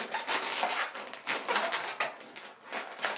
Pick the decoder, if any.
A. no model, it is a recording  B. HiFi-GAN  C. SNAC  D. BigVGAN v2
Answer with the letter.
A